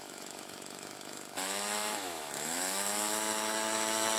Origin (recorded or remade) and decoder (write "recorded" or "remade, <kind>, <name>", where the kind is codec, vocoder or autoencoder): remade, autoencoder, DAC-VAE